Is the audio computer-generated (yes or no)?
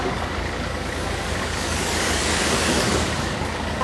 yes